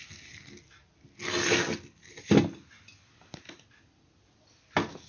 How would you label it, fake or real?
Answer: real